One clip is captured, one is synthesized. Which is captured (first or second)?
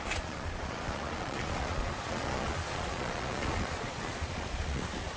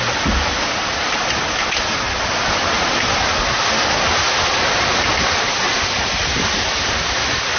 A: second